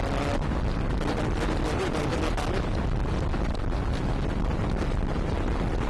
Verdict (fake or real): real